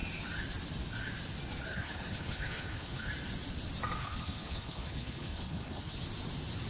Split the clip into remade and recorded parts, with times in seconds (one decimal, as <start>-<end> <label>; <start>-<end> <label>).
0.0-1.7 recorded; 1.7-3.1 remade; 3.1-4.0 recorded; 4.0-6.0 remade; 6.0-6.7 recorded